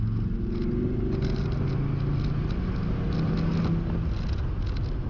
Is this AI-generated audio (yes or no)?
no